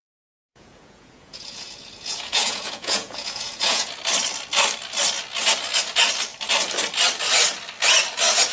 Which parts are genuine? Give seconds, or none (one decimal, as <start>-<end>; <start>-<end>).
3.9-8.5